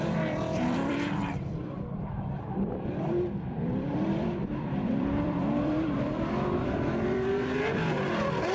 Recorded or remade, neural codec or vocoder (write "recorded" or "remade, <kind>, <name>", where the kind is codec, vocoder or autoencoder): remade, vocoder, BigVGAN v2